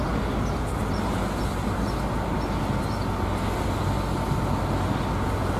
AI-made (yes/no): no